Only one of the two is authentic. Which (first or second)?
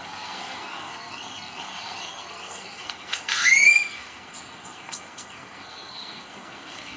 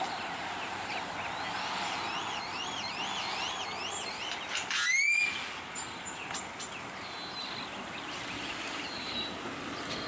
second